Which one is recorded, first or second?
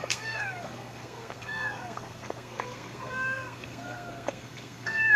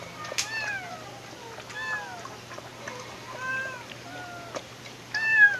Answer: second